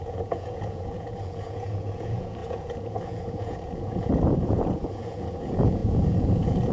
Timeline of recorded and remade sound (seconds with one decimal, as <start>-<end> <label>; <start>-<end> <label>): 0.0-6.7 remade